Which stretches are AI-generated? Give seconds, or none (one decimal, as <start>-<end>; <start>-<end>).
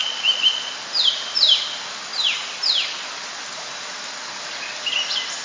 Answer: none